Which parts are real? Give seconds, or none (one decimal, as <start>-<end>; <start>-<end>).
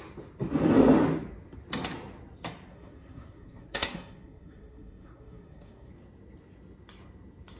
0.0-2.7; 5.9-7.6